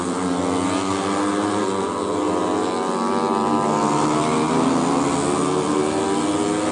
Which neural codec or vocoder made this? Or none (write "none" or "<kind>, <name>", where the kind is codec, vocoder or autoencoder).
none